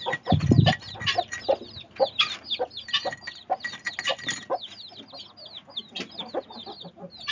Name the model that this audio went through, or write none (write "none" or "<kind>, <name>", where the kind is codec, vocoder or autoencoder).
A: none